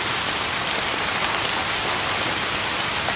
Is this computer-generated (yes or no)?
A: no